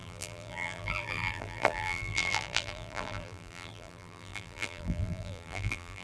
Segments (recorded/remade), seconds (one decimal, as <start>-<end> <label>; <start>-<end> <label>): 0.0-6.0 remade